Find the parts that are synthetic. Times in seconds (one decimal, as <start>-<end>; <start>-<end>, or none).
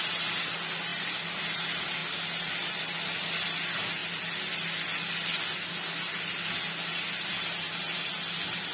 0.9-1.4; 7.3-8.1